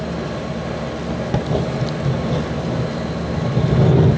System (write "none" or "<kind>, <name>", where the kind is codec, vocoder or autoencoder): none